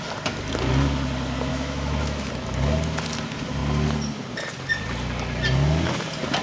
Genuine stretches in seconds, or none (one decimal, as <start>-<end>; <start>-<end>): 0.0-1.5; 2.3-6.4